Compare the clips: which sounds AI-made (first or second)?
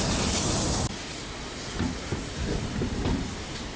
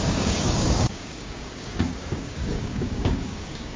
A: second